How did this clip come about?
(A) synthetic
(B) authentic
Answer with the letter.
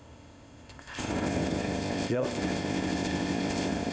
A